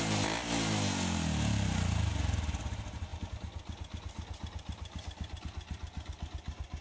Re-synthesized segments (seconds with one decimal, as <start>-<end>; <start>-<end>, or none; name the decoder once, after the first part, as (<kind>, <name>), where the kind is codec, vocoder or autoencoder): none